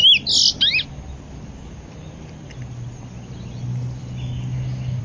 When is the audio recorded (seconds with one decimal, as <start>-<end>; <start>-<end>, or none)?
0.0-5.0

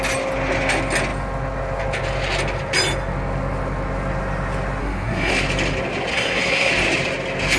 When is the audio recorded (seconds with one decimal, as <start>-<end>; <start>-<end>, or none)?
0.0-4.8; 5.3-6.1; 6.7-7.6

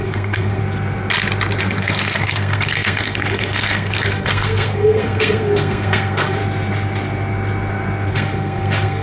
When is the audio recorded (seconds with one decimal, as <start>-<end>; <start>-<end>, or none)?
0.6-1.6; 6.4-8.1

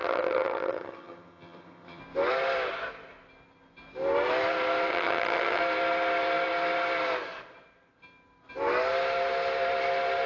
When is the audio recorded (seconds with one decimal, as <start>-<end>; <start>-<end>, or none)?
2.0-4.9; 5.6-10.3

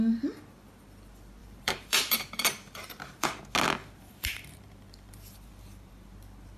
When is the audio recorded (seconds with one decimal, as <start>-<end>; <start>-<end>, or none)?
0.0-1.4; 3.4-3.8; 6.1-6.6